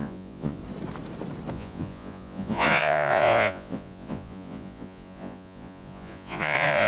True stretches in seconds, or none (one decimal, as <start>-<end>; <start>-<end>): 0.6-1.5